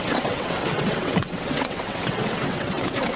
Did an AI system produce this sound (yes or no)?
yes